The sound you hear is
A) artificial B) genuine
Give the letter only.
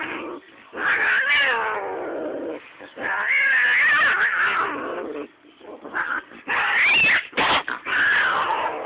B